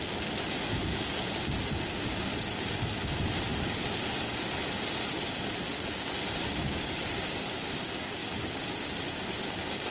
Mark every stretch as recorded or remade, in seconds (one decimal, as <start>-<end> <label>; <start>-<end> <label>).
0.0-9.9 recorded